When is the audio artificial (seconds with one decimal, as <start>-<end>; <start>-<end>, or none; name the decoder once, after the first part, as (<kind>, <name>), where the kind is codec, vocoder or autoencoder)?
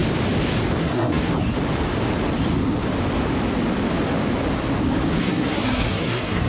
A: 0.8-1.3 (codec, SNAC); 5.2-6.5